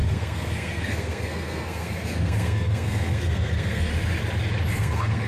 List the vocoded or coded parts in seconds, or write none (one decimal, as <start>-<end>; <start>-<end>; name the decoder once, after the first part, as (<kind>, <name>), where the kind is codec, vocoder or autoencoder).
0.0-3.9 (codec, SNAC); 4.8-5.3